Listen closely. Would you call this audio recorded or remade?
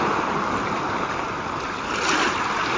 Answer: recorded